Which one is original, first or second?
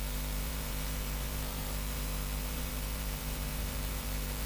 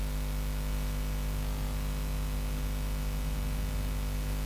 second